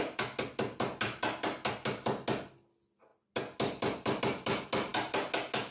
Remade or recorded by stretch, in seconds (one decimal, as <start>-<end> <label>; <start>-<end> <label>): 0.0-5.7 recorded